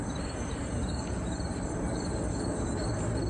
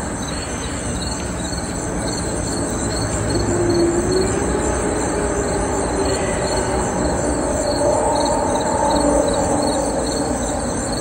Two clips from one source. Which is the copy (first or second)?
first